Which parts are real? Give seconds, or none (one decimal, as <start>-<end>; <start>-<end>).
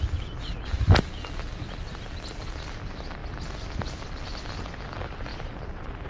0.0-5.3